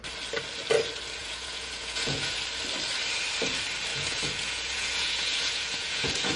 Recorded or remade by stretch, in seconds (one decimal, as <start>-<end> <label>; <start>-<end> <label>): 0.0-1.2 recorded; 1.2-2.4 remade; 2.4-3.9 recorded; 3.9-6.4 remade